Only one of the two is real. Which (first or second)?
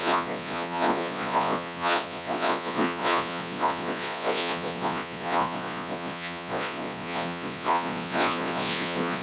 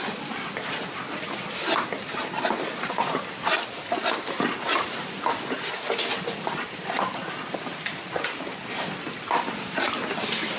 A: second